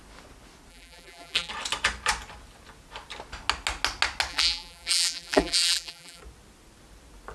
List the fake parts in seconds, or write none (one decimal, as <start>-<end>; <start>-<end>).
0.7-1.5; 4.3-6.2